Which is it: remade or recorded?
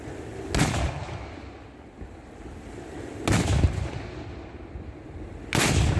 recorded